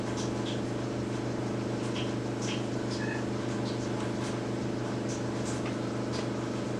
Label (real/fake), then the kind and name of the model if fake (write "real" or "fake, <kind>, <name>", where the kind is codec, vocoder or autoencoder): real